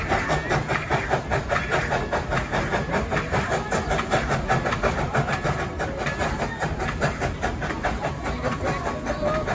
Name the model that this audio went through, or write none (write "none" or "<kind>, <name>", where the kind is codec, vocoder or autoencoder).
none